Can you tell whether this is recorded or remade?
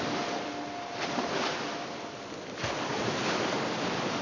recorded